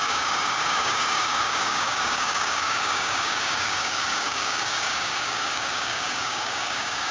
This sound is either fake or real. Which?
fake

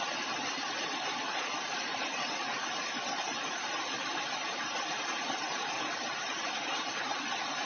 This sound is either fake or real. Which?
fake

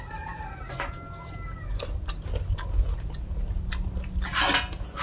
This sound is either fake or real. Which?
real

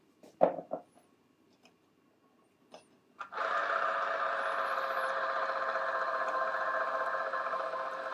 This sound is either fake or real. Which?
real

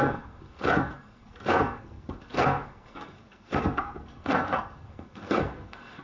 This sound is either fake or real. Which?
fake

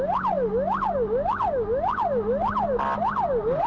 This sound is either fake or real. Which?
real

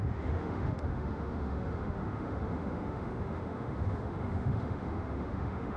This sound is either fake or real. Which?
fake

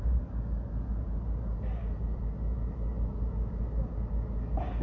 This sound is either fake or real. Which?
real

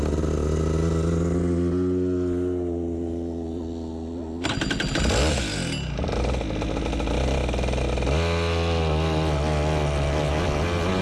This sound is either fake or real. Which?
real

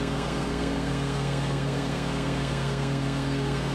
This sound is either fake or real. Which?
fake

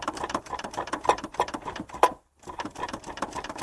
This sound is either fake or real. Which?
fake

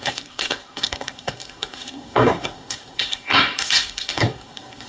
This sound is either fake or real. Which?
fake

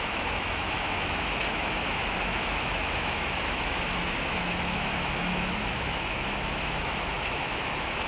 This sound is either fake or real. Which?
fake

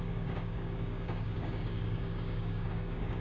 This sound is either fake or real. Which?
fake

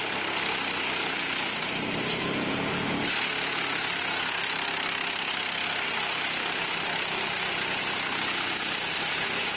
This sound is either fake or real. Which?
real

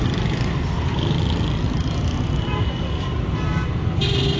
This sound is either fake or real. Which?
real